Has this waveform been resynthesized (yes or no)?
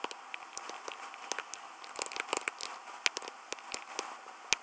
no